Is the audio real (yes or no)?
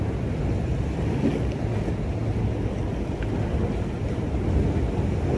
yes